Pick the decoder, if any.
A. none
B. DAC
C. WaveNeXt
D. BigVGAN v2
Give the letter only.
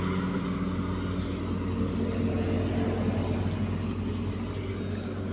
A